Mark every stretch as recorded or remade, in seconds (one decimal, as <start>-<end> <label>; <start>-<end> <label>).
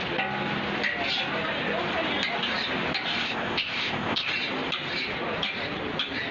0.0-3.2 recorded; 3.2-4.3 remade; 4.3-6.3 recorded